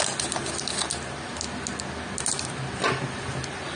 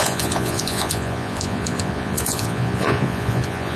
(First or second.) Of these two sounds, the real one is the first